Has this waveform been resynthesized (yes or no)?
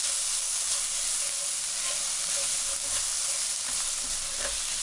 no